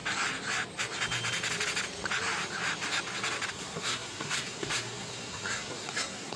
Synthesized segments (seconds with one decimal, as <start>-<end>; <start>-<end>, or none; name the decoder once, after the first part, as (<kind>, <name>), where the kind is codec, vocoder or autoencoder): 3.5-6.4 (codec, SNAC)